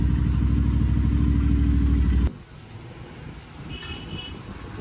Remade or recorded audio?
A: recorded